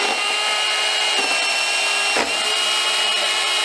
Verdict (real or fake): fake